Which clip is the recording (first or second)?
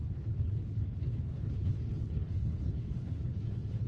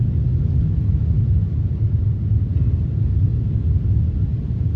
second